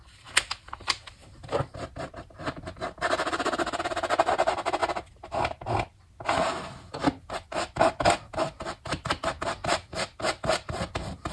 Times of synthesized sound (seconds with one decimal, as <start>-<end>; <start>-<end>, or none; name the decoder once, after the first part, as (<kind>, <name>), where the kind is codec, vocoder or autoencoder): 0.0-4.8 (vocoder, BigVGAN v2); 6.2-11.3